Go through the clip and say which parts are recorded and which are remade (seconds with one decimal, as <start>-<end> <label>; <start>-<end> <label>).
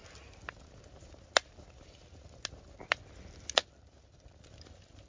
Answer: 0.0-5.1 recorded